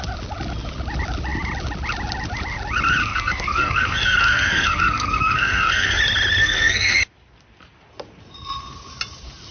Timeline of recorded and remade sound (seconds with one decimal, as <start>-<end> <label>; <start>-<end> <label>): 0.0-3.0 recorded; 3.0-6.0 remade; 6.0-6.4 recorded; 6.4-7.0 remade; 7.0-9.5 recorded